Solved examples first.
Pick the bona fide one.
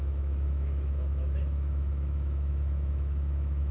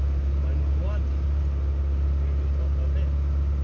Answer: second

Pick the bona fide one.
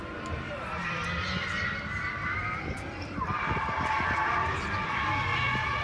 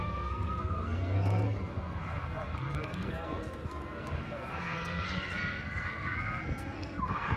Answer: first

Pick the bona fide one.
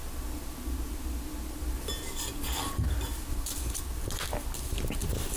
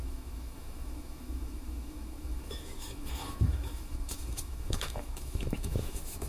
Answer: first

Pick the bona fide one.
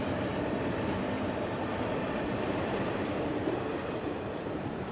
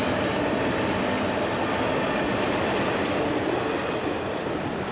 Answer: second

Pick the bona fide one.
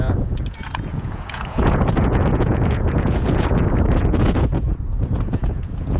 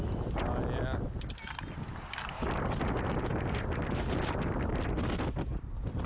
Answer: second